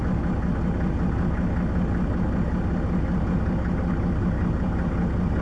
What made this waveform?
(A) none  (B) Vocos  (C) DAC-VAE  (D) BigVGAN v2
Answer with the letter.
A